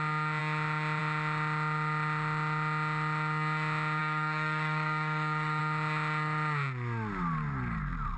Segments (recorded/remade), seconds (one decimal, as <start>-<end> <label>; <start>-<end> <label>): 0.0-4.0 recorded; 4.0-5.6 remade; 5.6-8.2 recorded